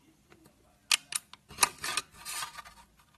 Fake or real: real